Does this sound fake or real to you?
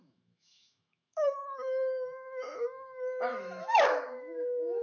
fake